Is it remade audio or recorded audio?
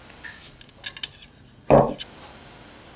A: recorded